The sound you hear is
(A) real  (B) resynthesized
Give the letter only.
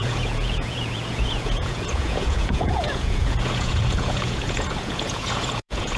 B